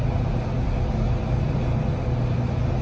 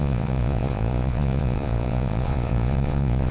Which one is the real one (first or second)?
first